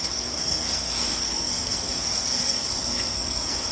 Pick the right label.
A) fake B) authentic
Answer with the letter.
A